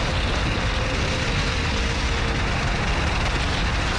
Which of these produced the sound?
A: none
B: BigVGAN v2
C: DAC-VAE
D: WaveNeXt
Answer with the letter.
A